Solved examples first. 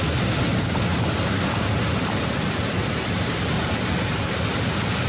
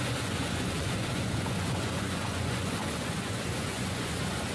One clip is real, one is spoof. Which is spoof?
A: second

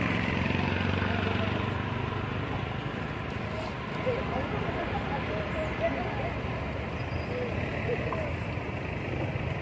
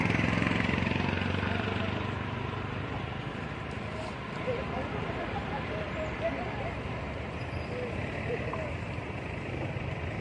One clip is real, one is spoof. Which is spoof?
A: second